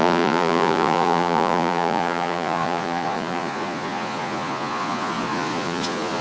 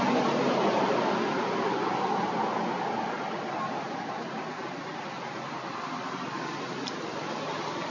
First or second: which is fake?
first